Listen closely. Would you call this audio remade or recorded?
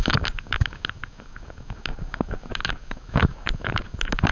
remade